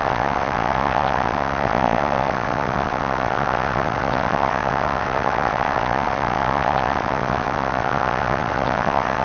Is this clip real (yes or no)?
no